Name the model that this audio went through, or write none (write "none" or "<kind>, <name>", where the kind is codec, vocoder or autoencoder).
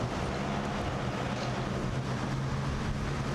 none